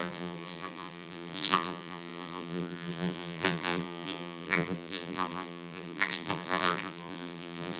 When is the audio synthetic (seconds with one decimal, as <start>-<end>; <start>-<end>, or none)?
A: 0.0-7.8